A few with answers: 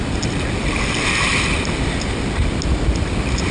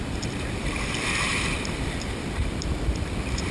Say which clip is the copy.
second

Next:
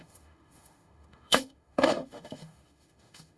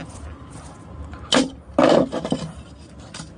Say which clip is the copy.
first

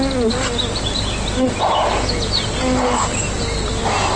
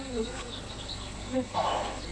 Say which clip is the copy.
second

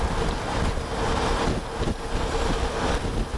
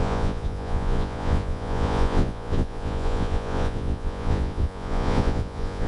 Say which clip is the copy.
second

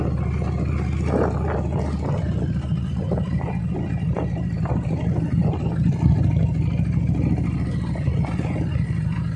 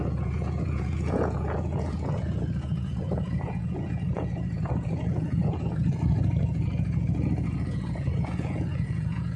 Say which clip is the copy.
second